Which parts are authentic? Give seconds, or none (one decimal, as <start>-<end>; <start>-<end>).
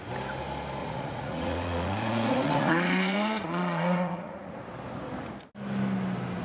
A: 0.0-0.8; 4.6-6.4